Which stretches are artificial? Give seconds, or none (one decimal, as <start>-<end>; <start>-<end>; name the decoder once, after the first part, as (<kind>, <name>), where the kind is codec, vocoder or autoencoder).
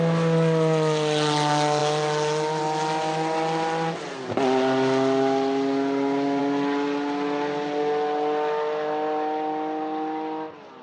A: none